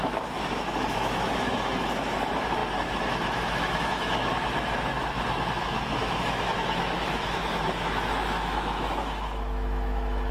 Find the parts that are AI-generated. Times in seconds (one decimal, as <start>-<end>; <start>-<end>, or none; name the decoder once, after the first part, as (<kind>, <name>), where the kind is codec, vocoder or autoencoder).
0.0-10.3 (autoencoder, DAC-VAE)